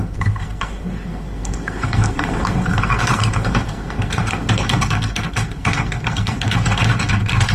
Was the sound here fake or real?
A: fake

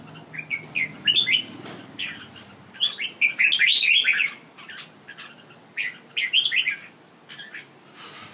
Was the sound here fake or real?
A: real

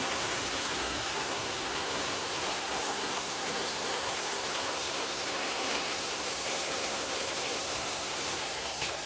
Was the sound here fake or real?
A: fake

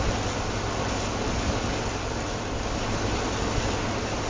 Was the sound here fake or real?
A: real